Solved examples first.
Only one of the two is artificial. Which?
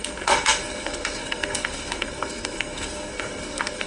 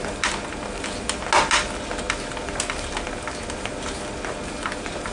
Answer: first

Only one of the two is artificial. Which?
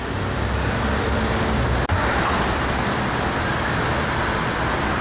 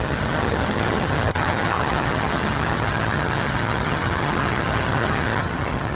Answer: second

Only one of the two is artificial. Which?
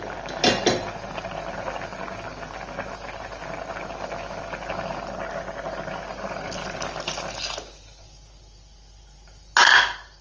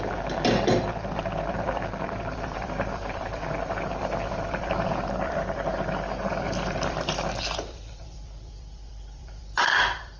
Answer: second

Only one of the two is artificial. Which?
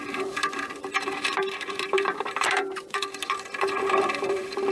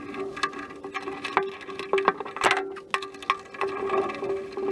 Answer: first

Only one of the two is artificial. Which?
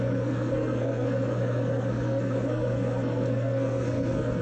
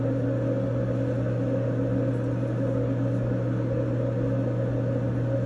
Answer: first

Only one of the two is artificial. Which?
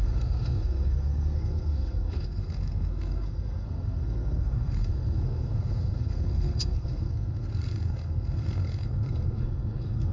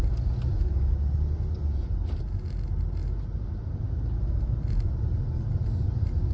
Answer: first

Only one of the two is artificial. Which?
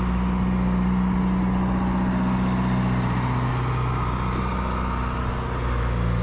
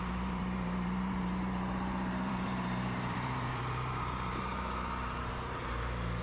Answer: second